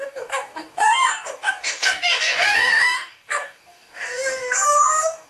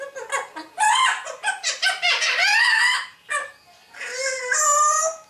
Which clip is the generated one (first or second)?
first